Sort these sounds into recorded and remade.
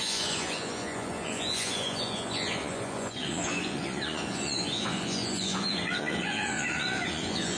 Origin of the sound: remade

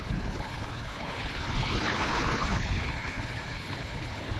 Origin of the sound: remade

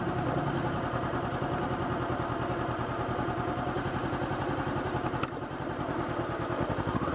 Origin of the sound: recorded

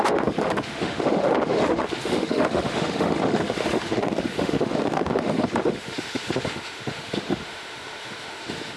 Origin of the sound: remade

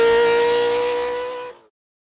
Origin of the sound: recorded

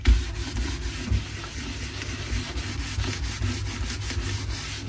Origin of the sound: recorded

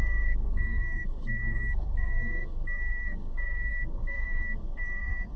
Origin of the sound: remade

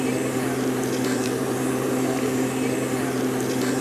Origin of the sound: remade